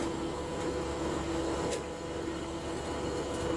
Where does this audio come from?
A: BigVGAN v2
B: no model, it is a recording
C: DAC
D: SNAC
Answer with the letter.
B